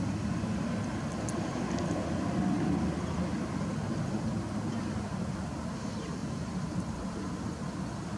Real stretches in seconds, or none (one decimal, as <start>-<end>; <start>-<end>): 0.0-8.2